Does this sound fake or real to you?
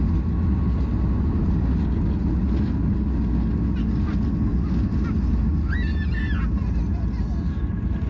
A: real